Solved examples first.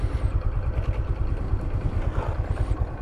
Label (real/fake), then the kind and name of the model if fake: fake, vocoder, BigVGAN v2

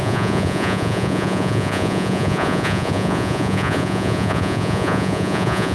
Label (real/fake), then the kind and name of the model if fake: fake, vocoder, Vocos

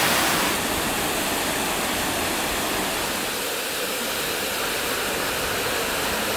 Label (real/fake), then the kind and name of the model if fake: real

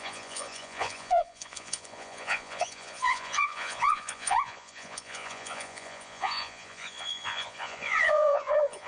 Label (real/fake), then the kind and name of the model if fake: fake, vocoder, Vocos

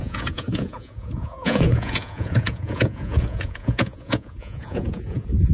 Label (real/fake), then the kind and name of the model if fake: fake, vocoder, Vocos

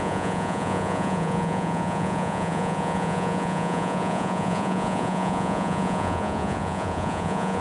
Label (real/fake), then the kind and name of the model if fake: fake, vocoder, Vocos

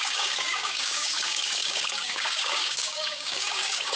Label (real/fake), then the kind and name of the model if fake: fake, codec, DAC